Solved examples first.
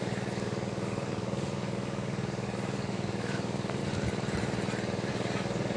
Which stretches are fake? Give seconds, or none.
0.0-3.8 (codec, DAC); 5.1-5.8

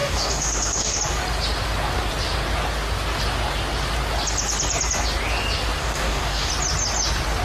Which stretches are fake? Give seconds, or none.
0.0-1.0 (codec, DAC); 5.8-6.5

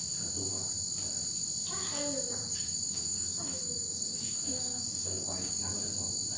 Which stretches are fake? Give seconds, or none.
2.4-5.6 (codec, DAC)

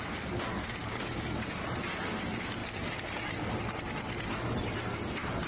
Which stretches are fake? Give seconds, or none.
0.6-1.2 (codec, DAC)

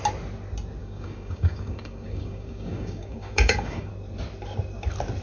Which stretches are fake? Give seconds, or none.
0.8-3.9 (codec, DAC)

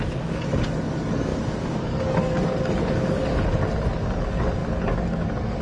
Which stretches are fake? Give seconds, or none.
0.0-3.3 (codec, DAC); 3.9-5.6

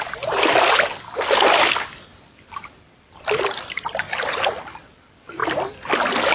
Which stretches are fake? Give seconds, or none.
none